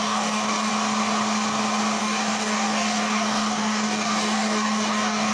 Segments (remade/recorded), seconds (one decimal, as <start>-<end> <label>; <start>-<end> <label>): 0.0-0.7 remade; 0.7-2.0 recorded; 2.0-5.3 remade